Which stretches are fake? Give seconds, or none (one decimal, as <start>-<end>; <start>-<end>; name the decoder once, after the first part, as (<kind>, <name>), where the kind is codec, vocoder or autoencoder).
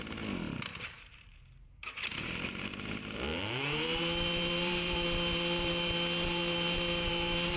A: 0.7-2.0 (vocoder, BigVGAN v2); 3.3-7.6